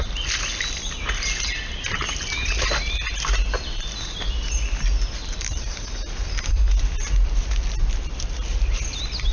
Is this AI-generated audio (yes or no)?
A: no